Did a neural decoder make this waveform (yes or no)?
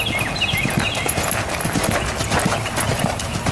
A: no